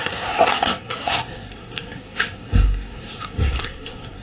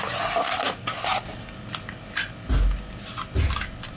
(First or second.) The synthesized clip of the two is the first